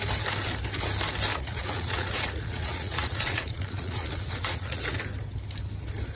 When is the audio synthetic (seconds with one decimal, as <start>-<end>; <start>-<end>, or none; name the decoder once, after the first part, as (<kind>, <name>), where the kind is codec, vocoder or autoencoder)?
1.3-5.0 (vocoder, Vocos)